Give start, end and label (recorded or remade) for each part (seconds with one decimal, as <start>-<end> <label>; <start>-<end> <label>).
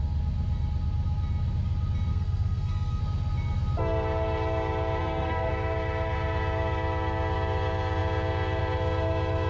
0.0-2.1 recorded; 2.1-3.0 remade; 3.0-5.0 recorded; 5.0-5.5 remade; 5.5-9.5 recorded